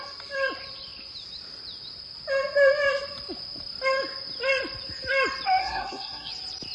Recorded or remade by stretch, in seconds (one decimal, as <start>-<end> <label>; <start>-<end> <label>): 0.0-5.6 recorded; 5.6-6.3 remade; 6.3-6.7 recorded